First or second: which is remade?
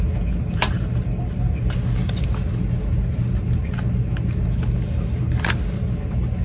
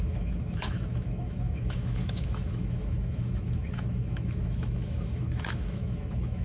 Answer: second